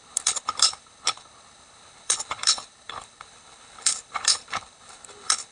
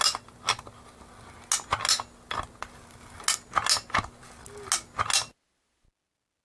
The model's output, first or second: first